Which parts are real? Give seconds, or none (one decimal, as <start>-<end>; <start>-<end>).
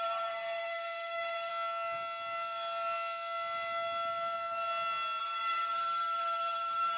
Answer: 1.5-5.2